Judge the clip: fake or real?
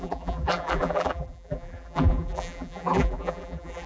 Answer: fake